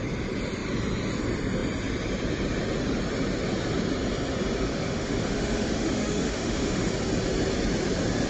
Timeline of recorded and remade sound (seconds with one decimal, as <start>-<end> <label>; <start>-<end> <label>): 0.0-4.7 recorded; 4.7-6.9 remade; 6.9-8.3 recorded